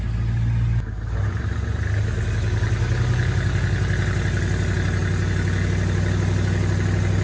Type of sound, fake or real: real